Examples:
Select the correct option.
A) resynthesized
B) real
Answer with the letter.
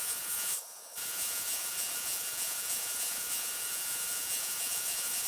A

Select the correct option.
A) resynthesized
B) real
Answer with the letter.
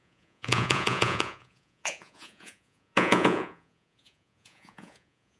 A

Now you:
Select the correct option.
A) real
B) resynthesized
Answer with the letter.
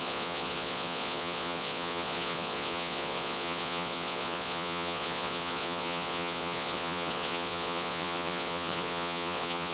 B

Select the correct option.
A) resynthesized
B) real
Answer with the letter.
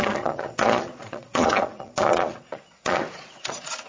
A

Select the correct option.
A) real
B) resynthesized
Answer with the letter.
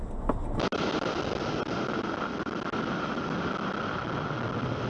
A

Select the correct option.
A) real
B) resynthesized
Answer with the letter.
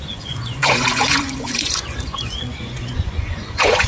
B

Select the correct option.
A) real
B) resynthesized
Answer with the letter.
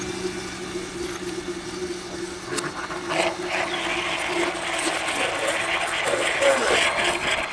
A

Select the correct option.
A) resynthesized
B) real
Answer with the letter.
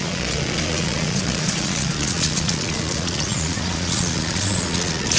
A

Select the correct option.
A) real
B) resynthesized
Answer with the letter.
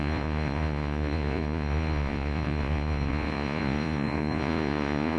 B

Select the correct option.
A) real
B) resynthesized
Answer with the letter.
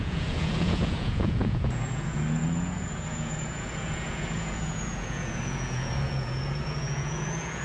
B